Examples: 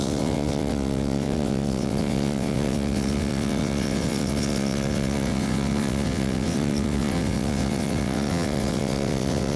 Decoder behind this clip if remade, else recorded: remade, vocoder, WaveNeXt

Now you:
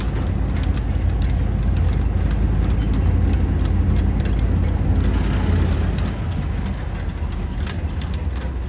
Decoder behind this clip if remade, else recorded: recorded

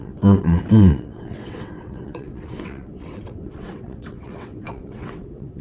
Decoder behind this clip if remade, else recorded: remade, vocoder, WaveNeXt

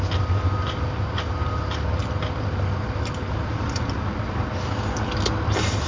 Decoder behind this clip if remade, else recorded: recorded